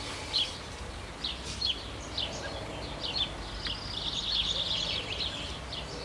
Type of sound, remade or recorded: recorded